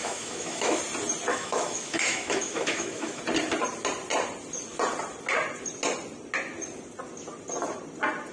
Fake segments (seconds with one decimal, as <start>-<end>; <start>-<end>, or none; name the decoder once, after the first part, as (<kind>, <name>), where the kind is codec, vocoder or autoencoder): 0.0-0.8 (autoencoder, DAC-VAE); 1.3-3.2